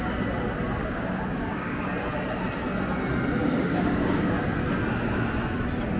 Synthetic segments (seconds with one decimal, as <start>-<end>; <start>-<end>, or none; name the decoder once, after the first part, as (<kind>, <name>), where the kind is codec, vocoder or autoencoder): 0.8-1.8 (codec, DAC); 3.4-4.4